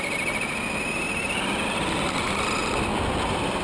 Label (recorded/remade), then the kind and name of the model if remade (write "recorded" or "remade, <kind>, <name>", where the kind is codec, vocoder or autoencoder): recorded